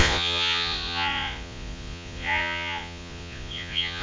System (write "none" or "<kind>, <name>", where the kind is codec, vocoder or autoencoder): vocoder, Vocos